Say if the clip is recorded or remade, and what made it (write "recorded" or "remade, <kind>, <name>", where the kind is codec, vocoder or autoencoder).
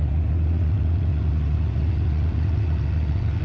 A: remade, vocoder, WaveNeXt